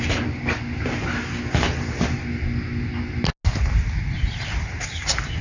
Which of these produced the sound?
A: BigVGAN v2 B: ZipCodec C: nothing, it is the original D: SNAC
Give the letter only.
C